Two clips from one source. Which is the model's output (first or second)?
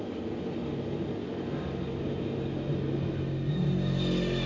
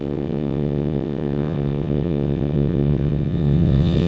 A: second